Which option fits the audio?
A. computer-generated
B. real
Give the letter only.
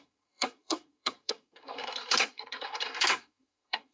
A